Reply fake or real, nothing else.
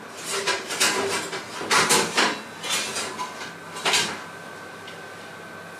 real